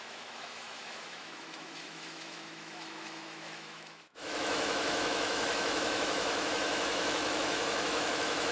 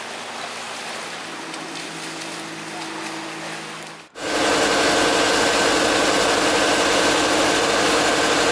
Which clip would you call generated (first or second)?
first